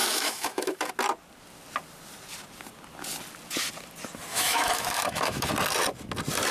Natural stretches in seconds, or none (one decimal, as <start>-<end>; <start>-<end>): 0.9-4.3; 5.5-6.5